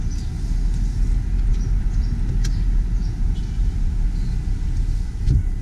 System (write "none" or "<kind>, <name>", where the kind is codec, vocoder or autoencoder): none